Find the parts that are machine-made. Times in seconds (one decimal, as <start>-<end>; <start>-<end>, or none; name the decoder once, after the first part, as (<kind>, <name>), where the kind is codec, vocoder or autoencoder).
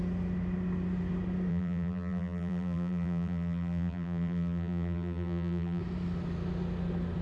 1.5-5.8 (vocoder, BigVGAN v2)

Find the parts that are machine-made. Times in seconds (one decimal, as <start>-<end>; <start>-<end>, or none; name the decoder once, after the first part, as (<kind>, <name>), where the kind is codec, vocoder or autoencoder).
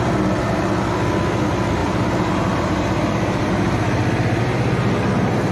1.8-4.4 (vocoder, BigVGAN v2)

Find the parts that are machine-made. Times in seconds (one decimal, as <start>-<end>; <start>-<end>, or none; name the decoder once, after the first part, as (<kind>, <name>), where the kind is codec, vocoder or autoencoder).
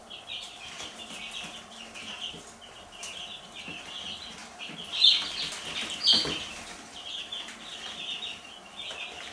0.0-1.2 (vocoder, BigVGAN v2); 4.4-8.9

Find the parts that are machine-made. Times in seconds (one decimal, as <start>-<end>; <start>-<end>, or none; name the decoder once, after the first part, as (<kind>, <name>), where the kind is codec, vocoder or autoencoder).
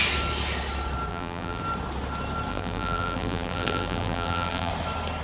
1.1-1.6 (vocoder, BigVGAN v2); 2.5-4.7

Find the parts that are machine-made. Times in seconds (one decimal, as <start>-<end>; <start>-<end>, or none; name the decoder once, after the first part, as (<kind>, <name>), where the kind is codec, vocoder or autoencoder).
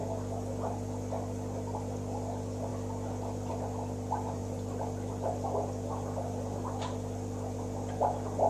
4.4-5.1 (vocoder, BigVGAN v2)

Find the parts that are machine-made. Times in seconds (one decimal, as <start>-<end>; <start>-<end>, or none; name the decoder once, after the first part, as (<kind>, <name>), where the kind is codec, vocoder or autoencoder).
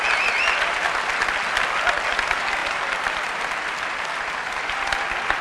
2.6-4.8 (vocoder, BigVGAN v2)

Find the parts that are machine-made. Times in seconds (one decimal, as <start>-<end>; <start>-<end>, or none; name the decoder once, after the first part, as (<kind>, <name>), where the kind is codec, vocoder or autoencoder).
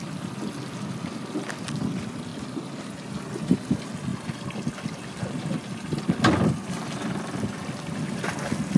2.3-2.9 (vocoder, BigVGAN v2)